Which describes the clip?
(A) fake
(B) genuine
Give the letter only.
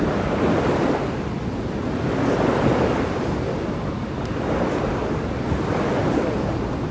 B